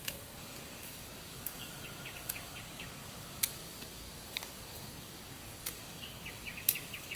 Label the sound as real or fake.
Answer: fake